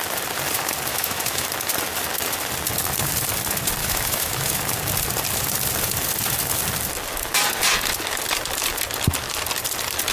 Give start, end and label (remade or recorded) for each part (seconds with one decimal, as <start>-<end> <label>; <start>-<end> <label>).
0.0-0.9 recorded; 0.9-1.5 remade; 1.5-3.8 recorded; 3.8-4.5 remade; 4.5-10.1 recorded